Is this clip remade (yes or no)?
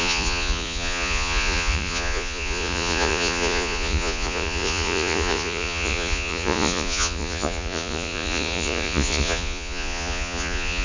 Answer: yes